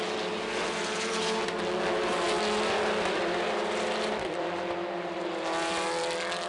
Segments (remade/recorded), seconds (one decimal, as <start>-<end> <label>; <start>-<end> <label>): 0.0-6.5 recorded